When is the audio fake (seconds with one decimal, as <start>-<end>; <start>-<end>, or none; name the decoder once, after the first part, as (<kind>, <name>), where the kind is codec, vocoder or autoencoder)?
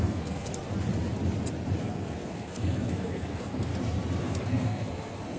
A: 0.0-0.5 (codec, SNAC); 1.8-3.7; 4.2-5.4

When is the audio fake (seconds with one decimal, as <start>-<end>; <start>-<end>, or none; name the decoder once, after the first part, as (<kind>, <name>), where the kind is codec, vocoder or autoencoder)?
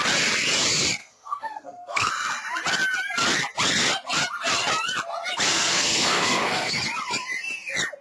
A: 1.0-2.1 (codec, SNAC); 5.5-6.7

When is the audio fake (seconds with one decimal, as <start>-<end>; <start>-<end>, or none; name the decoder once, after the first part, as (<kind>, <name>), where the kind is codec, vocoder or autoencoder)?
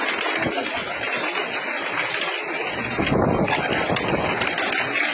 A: none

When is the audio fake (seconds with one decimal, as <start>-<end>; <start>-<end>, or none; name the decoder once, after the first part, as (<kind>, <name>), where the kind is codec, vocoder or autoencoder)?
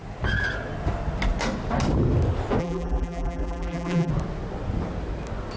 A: 2.6-4.1 (vocoder, BigVGAN v2)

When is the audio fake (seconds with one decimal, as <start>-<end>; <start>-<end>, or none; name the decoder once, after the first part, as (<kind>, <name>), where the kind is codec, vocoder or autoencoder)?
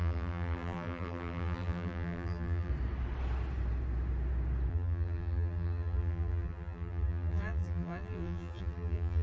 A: 0.0-2.7 (vocoder, BigVGAN v2); 4.7-9.2